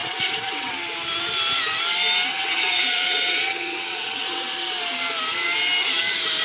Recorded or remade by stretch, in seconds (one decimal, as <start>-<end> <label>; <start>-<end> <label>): 0.0-0.7 remade; 0.7-2.3 recorded; 2.3-4.5 remade; 4.5-6.4 recorded